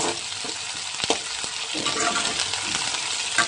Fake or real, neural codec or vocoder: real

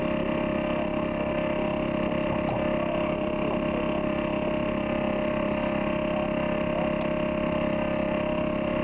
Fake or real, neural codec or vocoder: real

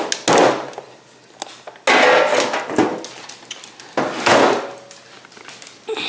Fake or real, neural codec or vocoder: real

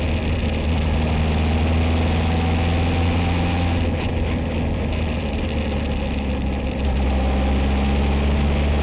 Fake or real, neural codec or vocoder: real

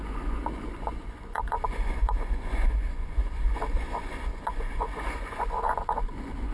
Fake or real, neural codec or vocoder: fake, vocoder, Vocos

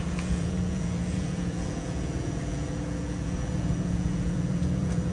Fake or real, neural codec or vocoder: fake, vocoder, Vocos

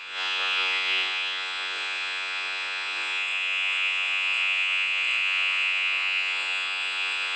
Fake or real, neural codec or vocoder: fake, vocoder, Vocos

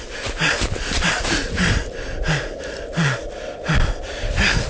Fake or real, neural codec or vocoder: real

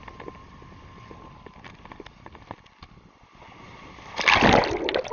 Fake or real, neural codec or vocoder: real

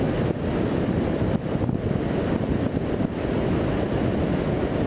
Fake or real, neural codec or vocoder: real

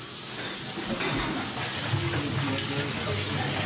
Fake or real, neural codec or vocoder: real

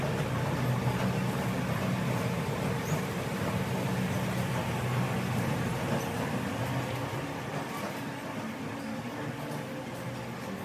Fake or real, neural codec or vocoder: real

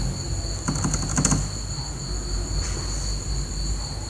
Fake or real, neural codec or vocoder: real